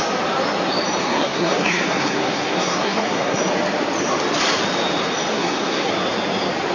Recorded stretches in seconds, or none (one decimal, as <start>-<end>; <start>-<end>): 0.0-1.0; 3.4-5.3; 5.9-6.7